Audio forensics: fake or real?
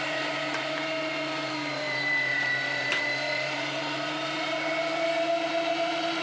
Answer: fake